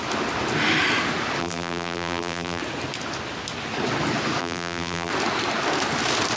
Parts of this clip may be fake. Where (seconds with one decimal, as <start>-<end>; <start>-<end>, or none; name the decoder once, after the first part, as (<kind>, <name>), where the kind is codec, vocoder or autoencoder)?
1.4-2.6 (vocoder, BigVGAN v2); 4.4-5.1